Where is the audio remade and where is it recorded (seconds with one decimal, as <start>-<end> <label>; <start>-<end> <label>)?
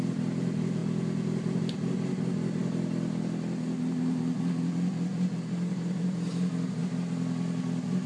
0.0-8.1 recorded